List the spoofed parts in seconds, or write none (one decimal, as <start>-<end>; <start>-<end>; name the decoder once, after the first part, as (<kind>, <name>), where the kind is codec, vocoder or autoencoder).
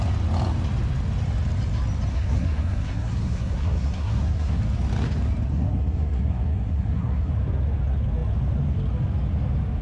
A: 2.1-4.6 (codec, SNAC); 5.5-7.3